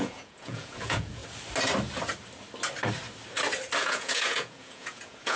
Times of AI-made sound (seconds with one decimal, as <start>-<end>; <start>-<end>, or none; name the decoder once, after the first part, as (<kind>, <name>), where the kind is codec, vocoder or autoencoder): 0.0-1.2 (vocoder, Vocos); 3.8-5.4